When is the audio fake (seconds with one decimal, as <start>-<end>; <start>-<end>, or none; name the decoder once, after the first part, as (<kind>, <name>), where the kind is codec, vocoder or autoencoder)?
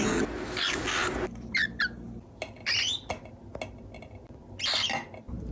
none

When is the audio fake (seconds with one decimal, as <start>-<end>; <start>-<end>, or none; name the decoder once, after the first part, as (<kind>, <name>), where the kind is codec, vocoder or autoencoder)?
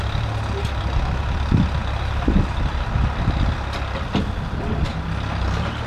none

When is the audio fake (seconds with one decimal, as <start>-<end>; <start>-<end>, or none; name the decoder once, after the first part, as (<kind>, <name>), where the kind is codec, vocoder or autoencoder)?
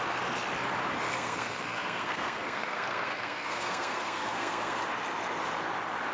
1.1-4.8 (codec, SNAC)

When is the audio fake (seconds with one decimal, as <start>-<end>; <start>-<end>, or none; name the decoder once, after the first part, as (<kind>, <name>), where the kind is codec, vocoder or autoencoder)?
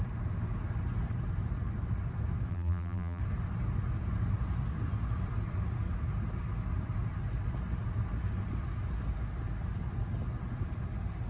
2.5-3.2 (vocoder, BigVGAN v2)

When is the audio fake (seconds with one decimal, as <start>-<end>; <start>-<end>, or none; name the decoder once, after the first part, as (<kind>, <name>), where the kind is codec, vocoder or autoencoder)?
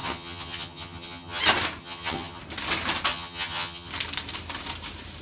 0.0-1.4 (vocoder, HiFi-GAN); 1.8-2.4; 3.1-3.9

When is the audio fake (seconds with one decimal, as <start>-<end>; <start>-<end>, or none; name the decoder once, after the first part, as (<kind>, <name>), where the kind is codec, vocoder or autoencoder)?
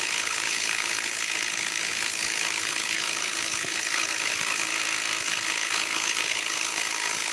0.0-4.7 (codec, HILCodec); 5.2-7.3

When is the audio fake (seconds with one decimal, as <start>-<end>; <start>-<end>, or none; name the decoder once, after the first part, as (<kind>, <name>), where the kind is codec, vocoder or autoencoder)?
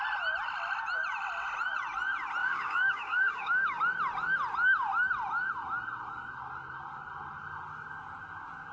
2.4-3.8 (codec, DAC)